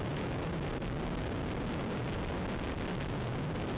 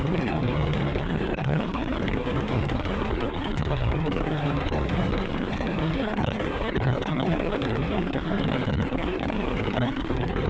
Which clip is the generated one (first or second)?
second